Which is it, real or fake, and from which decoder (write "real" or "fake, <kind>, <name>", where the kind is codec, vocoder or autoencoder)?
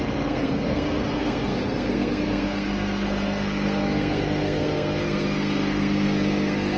fake, codec, SNAC